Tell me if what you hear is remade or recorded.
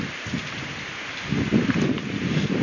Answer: remade